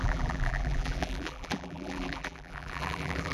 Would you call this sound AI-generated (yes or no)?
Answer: yes